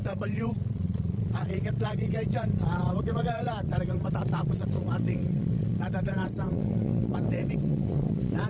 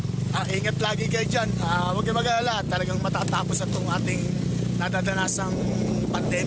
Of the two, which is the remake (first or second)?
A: first